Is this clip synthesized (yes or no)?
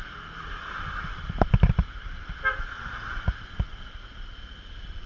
no